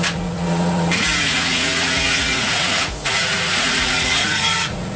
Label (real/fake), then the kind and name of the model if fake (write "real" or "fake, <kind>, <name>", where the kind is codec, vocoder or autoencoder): fake, vocoder, Vocos